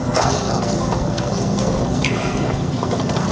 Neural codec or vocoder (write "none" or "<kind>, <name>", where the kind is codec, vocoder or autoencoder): codec, SNAC